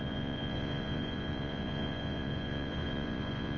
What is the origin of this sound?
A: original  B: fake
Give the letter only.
B